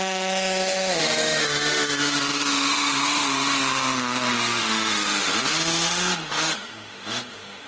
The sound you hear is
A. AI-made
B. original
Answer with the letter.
A